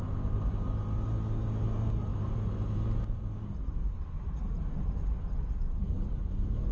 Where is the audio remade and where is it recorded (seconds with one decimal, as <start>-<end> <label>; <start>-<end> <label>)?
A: 0.0-2.1 recorded; 2.1-3.7 remade; 3.7-6.7 recorded